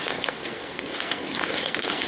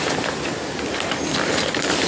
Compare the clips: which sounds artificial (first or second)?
first